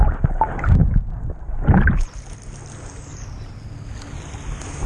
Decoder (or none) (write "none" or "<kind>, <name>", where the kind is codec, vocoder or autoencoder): none